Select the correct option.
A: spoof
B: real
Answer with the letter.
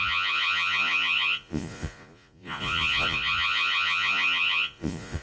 A